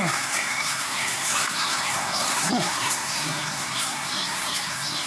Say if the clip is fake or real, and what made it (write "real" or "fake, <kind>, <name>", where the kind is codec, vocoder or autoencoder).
fake, codec, SNAC